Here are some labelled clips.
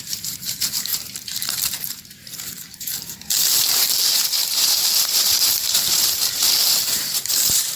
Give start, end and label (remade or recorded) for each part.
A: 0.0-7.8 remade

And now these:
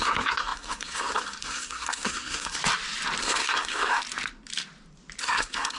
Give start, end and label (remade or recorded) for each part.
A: 0.0-2.6 remade; 2.6-3.2 recorded; 3.2-4.0 remade; 4.0-5.2 recorded; 5.2-5.8 remade

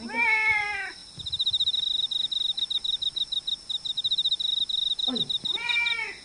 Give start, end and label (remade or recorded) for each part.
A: 0.0-6.2 recorded

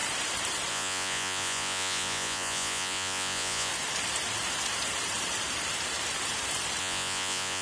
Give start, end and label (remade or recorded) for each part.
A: 0.0-0.7 recorded; 0.7-3.7 remade; 3.7-6.8 recorded; 6.8-7.6 remade

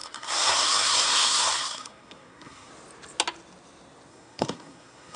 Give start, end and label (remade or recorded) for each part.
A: 0.0-2.7 remade; 2.7-4.1 recorded; 4.1-5.2 remade

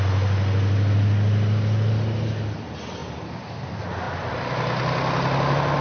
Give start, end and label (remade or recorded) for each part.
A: 0.0-5.8 recorded

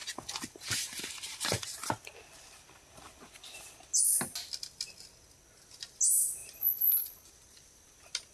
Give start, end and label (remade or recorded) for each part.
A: 0.0-8.3 recorded